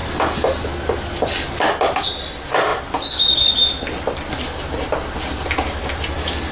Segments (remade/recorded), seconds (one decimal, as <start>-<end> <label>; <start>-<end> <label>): 0.0-6.5 recorded